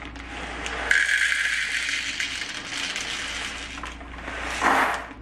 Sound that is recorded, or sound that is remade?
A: recorded